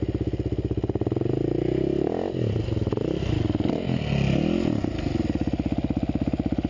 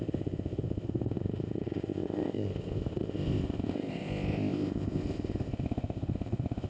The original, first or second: first